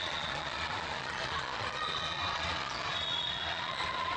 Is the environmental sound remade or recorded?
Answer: remade